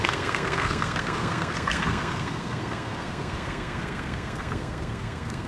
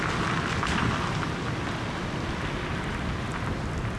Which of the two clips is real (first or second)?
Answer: second